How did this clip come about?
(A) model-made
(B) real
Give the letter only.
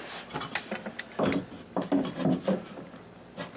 B